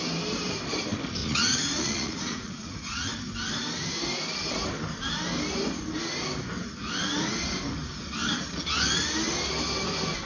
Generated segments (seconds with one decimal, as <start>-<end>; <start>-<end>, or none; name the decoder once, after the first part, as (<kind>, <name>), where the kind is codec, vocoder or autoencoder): 1.2-3.1 (vocoder, Vocos)